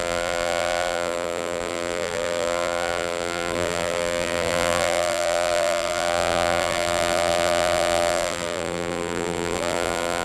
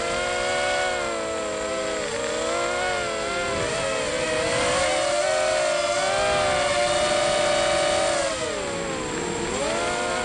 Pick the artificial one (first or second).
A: first